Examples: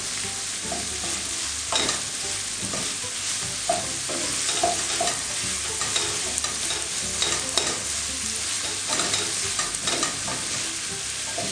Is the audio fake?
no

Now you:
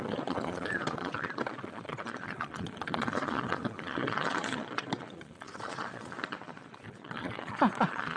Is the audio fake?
yes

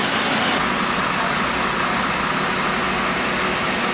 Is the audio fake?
no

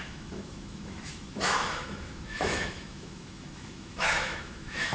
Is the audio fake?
yes